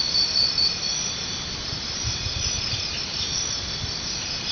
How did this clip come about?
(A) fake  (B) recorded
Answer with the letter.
B